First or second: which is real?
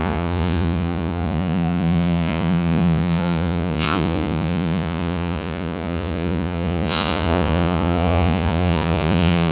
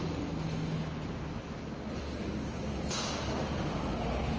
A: second